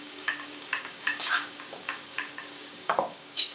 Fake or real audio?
fake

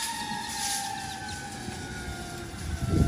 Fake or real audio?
real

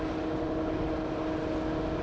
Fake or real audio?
real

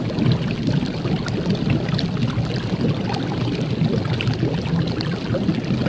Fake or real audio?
real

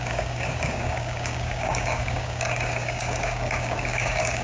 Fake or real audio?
fake